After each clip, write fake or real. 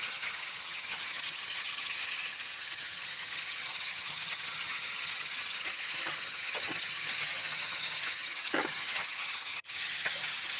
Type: fake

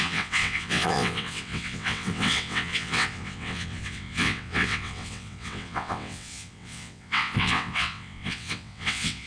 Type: fake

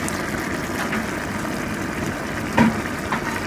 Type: real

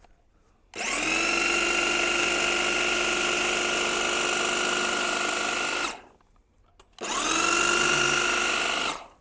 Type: real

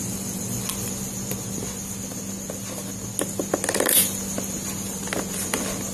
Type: real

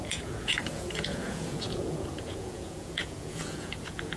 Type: fake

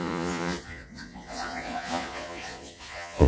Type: fake